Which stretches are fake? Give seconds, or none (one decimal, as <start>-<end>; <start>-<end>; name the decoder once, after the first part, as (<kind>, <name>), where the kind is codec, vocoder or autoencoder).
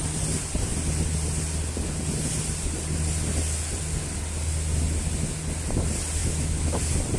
6.2-6.8 (autoencoder, DAC-VAE)